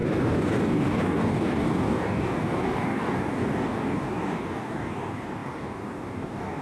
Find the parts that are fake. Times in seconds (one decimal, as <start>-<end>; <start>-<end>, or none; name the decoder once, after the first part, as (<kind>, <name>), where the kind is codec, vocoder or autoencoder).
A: 0.0-6.6 (codec, DAC)

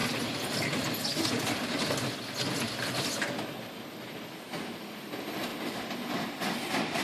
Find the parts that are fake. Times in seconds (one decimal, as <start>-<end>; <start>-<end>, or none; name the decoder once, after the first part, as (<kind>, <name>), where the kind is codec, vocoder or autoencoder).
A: none

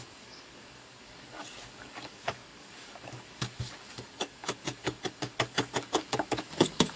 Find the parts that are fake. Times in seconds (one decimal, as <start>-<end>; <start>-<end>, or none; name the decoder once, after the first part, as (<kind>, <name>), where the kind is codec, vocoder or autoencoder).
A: 0.0-7.0 (codec, DAC)

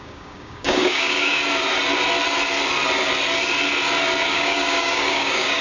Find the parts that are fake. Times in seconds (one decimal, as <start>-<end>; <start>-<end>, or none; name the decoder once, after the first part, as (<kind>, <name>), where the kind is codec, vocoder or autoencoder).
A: 0.0-1.4 (codec, DAC); 4.3-5.6

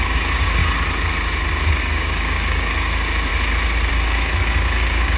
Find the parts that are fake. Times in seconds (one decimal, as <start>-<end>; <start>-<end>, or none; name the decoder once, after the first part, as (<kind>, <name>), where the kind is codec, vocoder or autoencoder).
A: 0.0-0.6 (codec, DAC); 1.8-3.3; 3.9-5.2

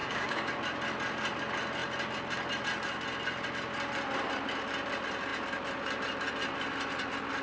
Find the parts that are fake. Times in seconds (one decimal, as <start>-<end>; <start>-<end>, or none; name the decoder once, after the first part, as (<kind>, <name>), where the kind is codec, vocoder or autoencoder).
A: 0.0-0.5 (codec, DAC)

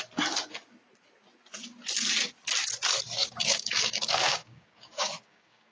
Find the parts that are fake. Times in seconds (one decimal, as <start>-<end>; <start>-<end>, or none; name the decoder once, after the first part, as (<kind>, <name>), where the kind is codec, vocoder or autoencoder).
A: 3.2-5.7 (codec, DAC)

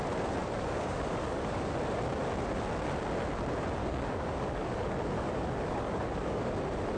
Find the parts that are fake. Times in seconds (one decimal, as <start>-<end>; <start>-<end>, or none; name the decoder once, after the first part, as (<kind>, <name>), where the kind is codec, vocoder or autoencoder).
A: 0.4-1.7 (codec, DAC); 3.8-6.5